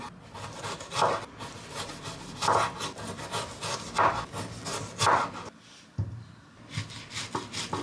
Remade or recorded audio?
recorded